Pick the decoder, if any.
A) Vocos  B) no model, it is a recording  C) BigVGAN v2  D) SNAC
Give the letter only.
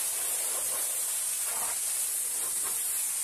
B